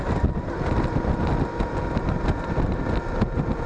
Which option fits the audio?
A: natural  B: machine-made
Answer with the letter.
A